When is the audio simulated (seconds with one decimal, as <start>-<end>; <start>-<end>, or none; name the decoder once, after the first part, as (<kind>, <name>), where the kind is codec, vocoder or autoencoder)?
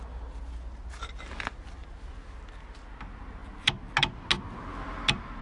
none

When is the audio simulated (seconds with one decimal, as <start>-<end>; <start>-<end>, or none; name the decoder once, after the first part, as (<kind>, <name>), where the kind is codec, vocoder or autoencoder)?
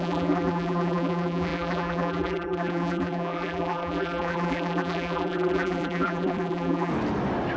0.0-6.9 (vocoder, BigVGAN v2)